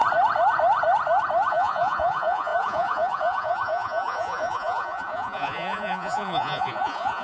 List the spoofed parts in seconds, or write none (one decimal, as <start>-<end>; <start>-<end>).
1.5-7.2